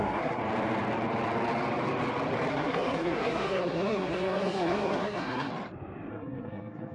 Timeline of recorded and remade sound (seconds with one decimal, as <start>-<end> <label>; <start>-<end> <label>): 0.0-0.4 remade; 0.4-2.5 recorded; 2.5-5.5 remade; 5.5-6.1 recorded; 6.1-6.9 remade